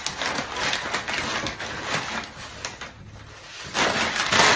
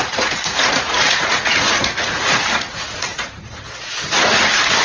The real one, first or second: first